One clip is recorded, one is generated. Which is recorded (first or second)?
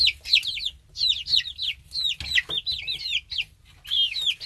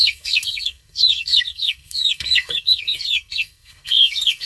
first